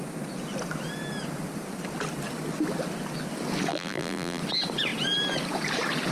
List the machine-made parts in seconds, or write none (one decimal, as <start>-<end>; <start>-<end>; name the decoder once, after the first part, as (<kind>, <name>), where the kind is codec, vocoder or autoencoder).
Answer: 3.7-4.4 (vocoder, BigVGAN v2)